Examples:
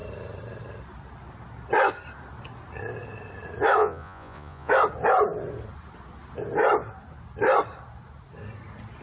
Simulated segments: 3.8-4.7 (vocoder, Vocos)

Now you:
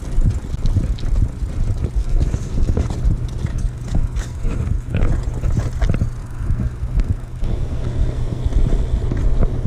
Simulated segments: 2.0-2.9 (codec, SNAC); 3.5-5.1; 6.2-8.4

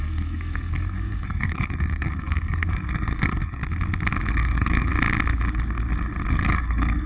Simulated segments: 0.0-3.6 (codec, SNAC); 4.3-4.9; 6.3-7.1

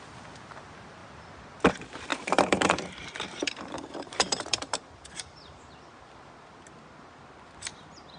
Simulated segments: 2.1-5.6 (vocoder, BigVGAN v2)